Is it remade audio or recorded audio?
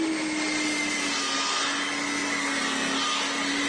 recorded